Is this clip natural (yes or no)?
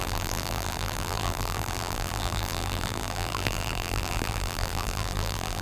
no